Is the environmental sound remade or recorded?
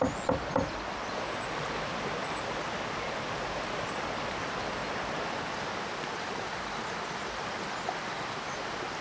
recorded